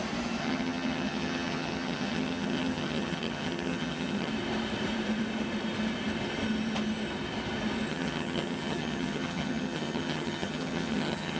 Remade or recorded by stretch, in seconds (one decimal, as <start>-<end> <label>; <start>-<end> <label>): 0.0-0.4 recorded; 0.4-4.3 remade; 4.3-7.9 recorded; 7.9-11.4 remade